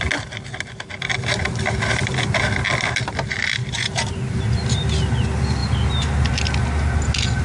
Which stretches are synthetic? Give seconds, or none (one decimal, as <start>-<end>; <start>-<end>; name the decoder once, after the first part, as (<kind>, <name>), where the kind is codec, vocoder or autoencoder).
3.6-4.4 (vocoder, BigVGAN v2)